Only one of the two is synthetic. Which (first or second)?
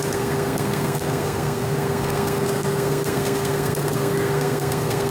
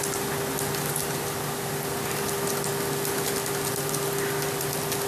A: first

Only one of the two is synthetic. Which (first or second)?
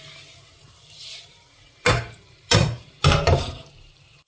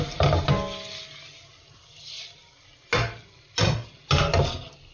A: first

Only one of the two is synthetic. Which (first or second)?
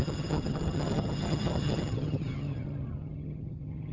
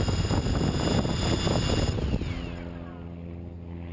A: first